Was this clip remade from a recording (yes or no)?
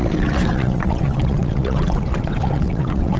yes